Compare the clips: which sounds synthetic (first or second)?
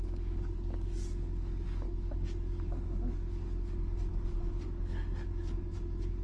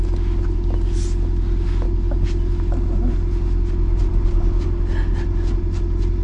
first